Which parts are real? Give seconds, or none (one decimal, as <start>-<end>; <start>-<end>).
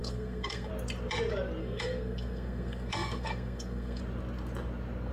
0.7-1.6; 4.0-5.1